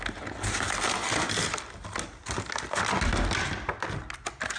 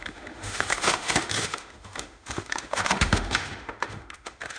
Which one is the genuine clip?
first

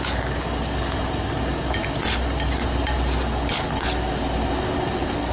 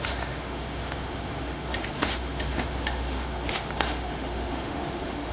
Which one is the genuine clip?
first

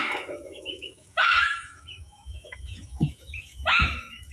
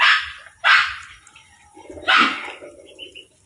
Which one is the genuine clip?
second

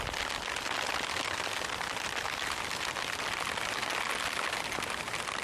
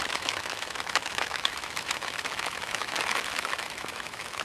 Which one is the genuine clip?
first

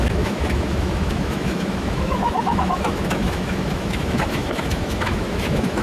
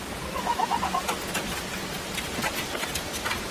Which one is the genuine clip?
second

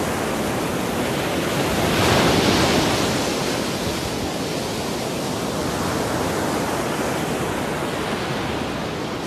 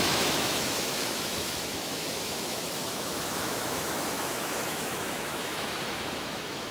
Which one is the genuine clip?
first